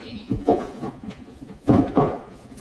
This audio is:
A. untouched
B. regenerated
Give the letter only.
B